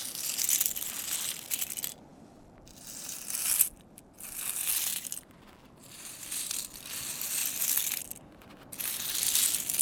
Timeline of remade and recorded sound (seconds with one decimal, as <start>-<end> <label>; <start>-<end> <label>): 0.0-4.9 recorded; 4.9-6.5 remade; 6.5-9.8 recorded